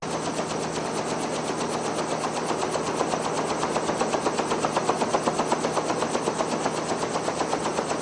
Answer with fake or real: real